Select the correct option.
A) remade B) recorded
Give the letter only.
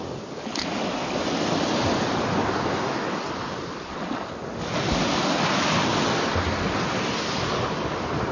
B